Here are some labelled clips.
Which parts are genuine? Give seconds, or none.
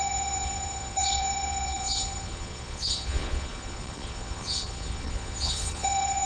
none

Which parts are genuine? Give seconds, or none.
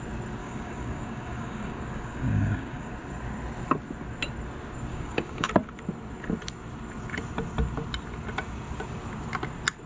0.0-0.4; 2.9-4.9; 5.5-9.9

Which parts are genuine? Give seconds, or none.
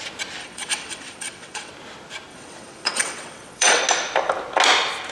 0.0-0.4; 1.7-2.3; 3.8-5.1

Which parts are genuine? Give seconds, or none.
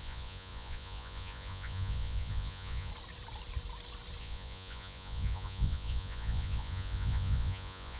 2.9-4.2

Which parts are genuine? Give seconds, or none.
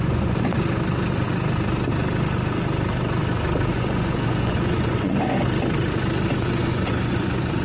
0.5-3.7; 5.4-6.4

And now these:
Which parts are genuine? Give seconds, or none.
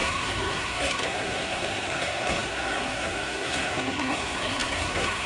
none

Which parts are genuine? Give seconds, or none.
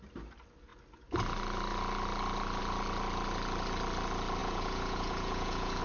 0.0-4.4